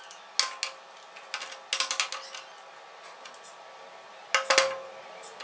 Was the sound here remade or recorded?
recorded